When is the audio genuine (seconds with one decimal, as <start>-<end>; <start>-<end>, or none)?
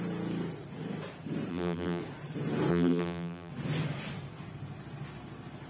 0.0-1.5; 2.0-2.7; 3.5-5.7